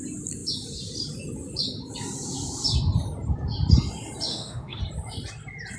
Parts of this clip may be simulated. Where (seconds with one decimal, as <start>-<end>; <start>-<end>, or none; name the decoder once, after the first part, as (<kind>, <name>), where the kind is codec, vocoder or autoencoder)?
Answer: 4.3-4.8 (autoencoder, DAC-VAE)